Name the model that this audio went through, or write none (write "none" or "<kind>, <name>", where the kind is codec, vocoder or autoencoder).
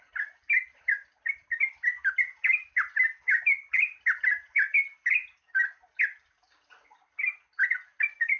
none